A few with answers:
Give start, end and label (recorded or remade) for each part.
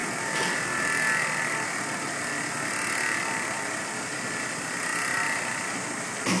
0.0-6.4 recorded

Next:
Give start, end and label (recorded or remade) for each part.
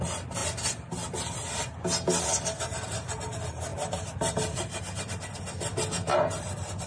0.0-6.9 recorded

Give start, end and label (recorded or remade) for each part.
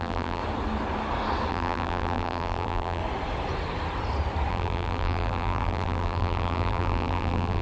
0.0-0.4 remade; 0.4-1.5 recorded; 1.5-3.0 remade; 3.0-4.5 recorded; 4.5-7.6 remade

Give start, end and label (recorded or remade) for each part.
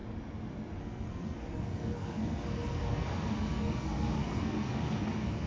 0.0-0.8 recorded; 0.8-5.5 remade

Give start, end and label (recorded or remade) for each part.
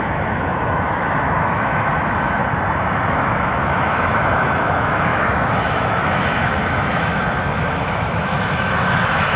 0.0-2.4 remade; 2.4-3.1 recorded; 3.1-9.4 remade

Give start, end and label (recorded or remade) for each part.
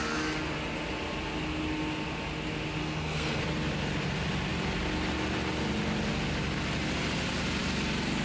0.0-2.8 recorded; 2.8-3.4 remade; 3.4-8.2 recorded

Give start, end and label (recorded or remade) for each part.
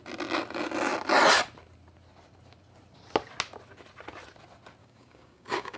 0.0-4.8 recorded; 4.8-5.8 remade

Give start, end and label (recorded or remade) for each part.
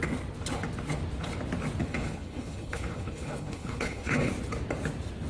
0.0-1.8 recorded; 1.8-4.3 remade; 4.3-5.3 recorded